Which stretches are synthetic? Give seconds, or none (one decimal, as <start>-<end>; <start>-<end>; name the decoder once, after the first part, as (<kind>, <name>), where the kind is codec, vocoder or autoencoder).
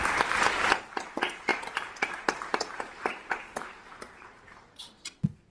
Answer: 1.5-4.8 (vocoder, BigVGAN v2)